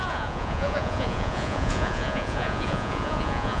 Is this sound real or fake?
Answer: fake